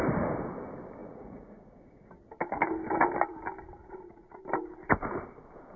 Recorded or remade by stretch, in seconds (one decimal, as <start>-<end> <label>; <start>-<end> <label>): 0.0-1.0 recorded; 1.0-2.1 remade; 2.1-3.8 recorded; 3.8-4.4 remade; 4.4-5.8 recorded